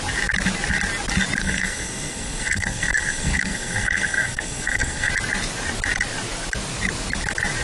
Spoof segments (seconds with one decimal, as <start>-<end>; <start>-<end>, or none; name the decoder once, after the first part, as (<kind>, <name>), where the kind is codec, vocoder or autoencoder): 1.4-5.1 (codec, SNAC)